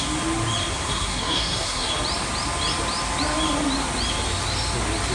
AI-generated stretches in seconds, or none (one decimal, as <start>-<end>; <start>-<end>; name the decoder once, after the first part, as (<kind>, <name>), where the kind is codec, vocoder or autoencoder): 0.7-1.9 (codec, SNAC)